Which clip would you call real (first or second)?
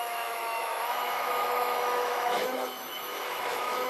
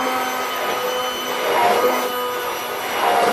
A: second